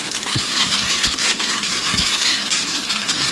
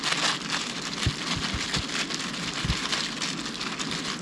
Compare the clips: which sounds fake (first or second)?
first